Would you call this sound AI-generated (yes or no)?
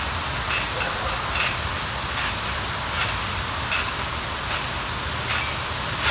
no